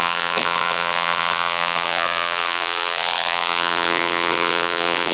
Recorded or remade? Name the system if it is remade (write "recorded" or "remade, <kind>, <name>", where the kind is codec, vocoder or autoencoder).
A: remade, vocoder, BigVGAN v2